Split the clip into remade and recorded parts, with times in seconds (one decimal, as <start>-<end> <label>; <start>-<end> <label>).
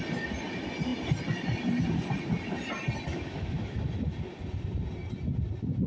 0.0-3.1 recorded; 3.1-3.8 remade; 3.8-5.9 recorded